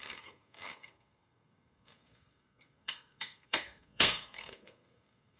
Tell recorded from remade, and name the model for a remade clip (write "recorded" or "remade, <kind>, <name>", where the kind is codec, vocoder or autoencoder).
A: remade, codec, SNAC